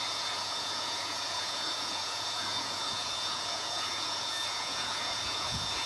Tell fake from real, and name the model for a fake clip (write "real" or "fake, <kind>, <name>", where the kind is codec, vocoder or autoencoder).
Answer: fake, vocoder, Vocos